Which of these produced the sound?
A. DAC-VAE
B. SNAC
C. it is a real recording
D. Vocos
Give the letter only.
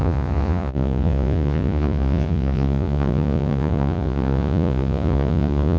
D